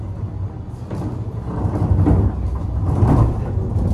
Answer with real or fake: real